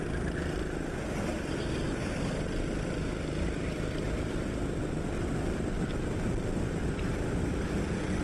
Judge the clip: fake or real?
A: real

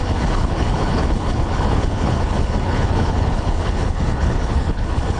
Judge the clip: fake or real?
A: fake